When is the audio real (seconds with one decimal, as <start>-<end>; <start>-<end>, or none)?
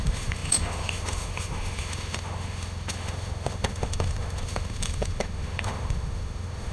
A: none